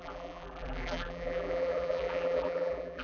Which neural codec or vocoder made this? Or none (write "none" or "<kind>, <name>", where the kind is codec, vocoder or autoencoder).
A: vocoder, BigVGAN v2